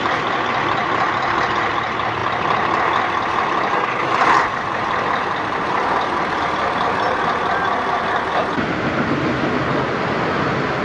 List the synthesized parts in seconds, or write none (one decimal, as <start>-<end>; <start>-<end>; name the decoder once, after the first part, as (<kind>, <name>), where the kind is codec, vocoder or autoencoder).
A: none

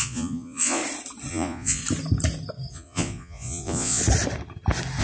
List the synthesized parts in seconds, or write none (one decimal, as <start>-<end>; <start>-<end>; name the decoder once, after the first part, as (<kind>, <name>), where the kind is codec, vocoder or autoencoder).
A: 0.0-0.8 (vocoder, Vocos); 1.3-1.8; 2.7-4.0

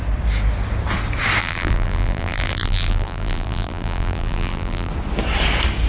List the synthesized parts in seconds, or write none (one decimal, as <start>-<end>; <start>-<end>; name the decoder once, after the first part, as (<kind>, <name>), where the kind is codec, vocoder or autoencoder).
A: 1.4-4.9 (vocoder, BigVGAN v2)